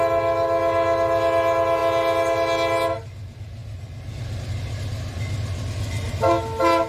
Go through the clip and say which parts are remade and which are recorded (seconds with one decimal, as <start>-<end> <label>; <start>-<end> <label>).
0.0-6.9 recorded